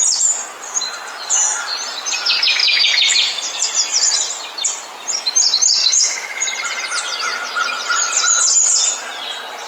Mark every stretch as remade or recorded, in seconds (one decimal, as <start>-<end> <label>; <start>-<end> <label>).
0.0-5.8 recorded; 5.8-6.4 remade; 6.4-9.7 recorded